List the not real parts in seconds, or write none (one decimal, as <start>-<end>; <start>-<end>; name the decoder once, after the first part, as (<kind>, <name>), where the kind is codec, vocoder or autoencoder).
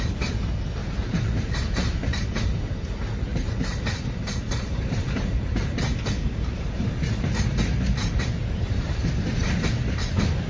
0.8-2.7 (vocoder, BigVGAN v2); 3.3-6.9; 8.0-9.6